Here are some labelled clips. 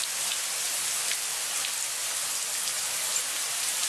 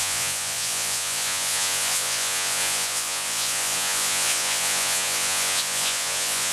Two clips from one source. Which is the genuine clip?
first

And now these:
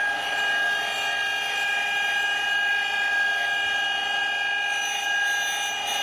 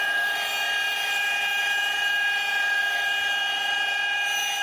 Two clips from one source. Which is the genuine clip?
first